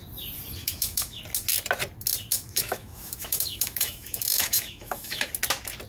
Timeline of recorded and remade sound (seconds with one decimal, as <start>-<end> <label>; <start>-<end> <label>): 0.0-0.6 recorded; 0.6-1.2 remade; 1.2-2.3 recorded; 2.3-5.3 remade; 5.3-5.9 recorded